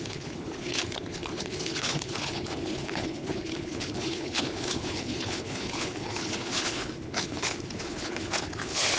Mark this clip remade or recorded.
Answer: remade